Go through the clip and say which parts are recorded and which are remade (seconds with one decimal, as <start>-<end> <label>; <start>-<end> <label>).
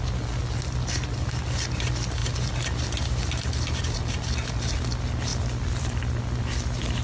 0.0-5.3 recorded; 5.3-6.2 remade; 6.2-7.0 recorded